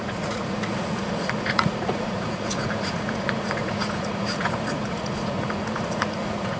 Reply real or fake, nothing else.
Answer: fake